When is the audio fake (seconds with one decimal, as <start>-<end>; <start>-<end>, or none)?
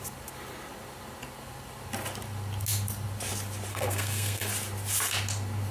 3.7-4.5